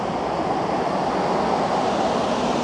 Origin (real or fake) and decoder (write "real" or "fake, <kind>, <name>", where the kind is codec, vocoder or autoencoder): real